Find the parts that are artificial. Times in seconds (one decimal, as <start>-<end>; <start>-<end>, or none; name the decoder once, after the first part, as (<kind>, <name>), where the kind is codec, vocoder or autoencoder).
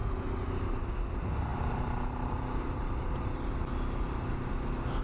1.5-3.5 (vocoder, BigVGAN v2)